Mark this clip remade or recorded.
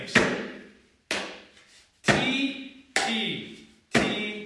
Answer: recorded